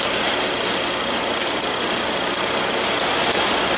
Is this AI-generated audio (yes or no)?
no